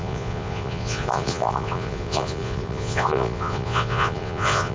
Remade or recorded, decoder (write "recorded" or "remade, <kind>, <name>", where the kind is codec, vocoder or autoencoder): remade, vocoder, Vocos